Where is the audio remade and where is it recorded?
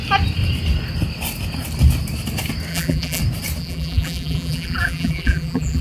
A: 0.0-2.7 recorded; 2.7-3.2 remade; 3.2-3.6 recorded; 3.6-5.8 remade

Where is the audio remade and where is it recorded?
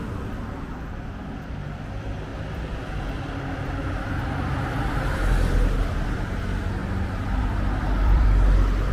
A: 0.0-2.3 recorded; 2.3-5.5 remade; 5.5-6.8 recorded; 6.8-8.9 remade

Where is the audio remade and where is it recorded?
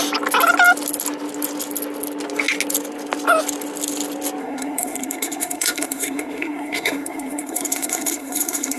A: 0.0-4.4 recorded; 4.4-8.8 remade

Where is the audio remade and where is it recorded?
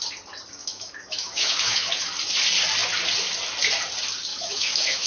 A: 0.0-0.6 recorded; 0.6-1.9 remade; 1.9-4.3 recorded; 4.3-5.1 remade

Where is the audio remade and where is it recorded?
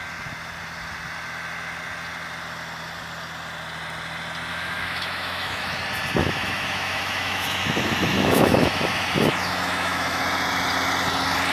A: 0.0-4.5 recorded; 4.5-5.8 remade; 5.8-6.2 recorded; 6.2-10.2 remade; 10.2-11.5 recorded